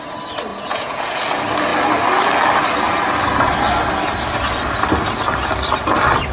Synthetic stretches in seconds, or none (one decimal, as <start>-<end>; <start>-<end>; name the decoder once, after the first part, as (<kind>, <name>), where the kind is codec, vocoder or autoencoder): 0.5-1.2 (vocoder, Vocos)